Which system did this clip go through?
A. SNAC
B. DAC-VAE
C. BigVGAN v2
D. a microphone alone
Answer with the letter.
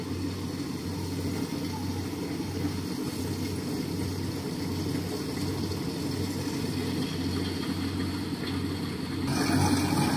D